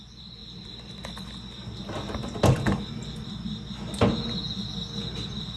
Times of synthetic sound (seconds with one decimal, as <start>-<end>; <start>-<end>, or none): none